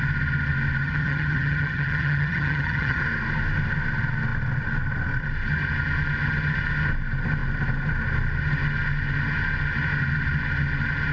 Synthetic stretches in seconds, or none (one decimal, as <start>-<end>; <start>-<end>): 0.8-3.0